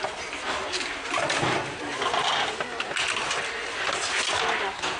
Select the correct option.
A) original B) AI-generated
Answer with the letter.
A